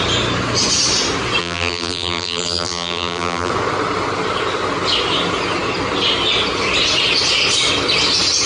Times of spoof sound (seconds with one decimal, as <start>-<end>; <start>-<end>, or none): 1.4-3.5